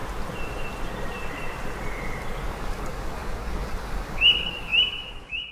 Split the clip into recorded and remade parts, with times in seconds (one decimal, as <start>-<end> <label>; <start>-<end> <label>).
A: 0.0-2.5 recorded; 2.5-5.5 remade